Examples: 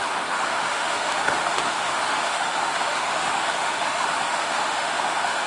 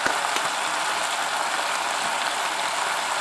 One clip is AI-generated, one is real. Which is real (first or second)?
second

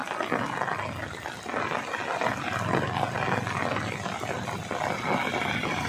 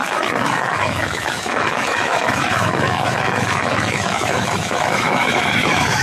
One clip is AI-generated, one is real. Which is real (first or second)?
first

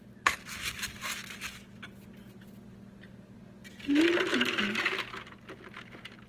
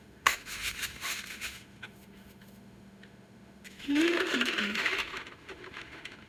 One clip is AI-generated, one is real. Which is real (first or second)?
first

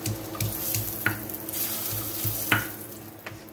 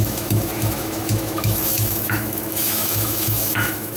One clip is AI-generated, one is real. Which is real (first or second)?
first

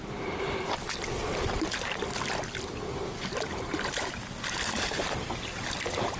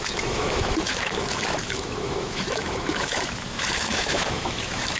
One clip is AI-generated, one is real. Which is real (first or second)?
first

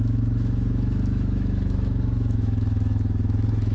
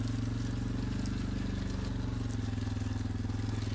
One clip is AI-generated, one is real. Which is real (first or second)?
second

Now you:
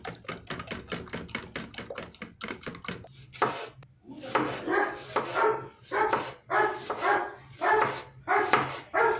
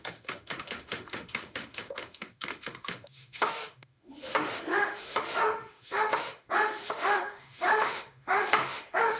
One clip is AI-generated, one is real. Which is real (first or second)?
first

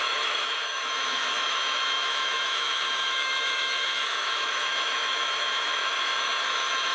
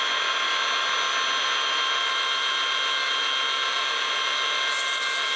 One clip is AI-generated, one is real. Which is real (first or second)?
second